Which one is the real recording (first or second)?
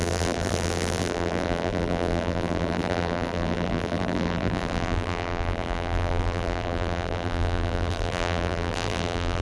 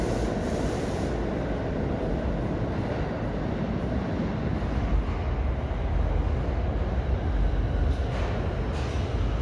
second